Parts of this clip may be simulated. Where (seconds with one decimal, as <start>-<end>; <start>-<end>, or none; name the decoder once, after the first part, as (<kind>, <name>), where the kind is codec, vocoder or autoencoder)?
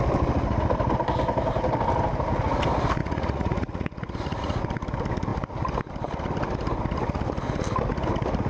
3.0-4.6 (vocoder, Vocos)